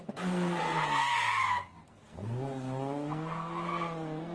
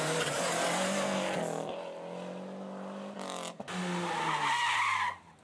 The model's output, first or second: first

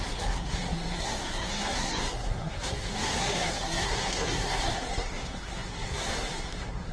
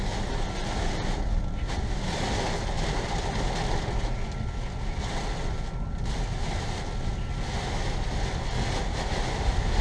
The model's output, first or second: first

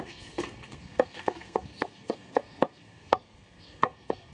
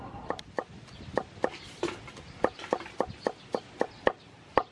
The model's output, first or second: first